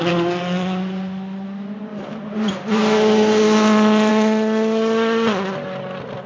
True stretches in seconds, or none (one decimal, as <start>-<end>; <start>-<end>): 0.0-6.3